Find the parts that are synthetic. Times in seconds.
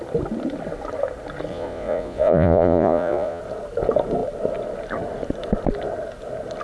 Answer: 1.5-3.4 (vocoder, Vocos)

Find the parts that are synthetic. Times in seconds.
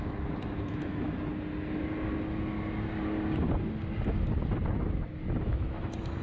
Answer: 0.0-1.3 (autoencoder, DAC-VAE); 4.8-6.2